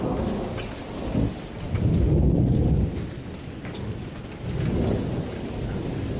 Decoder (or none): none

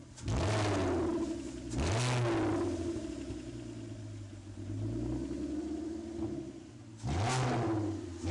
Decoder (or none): none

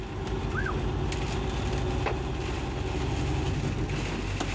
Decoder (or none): none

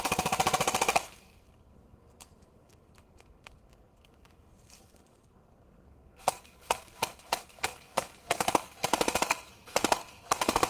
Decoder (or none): codec, SNAC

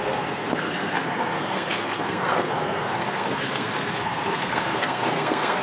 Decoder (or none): codec, SNAC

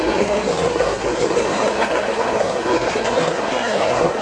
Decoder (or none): codec, SNAC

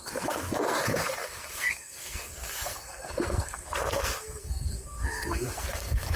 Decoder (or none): codec, SNAC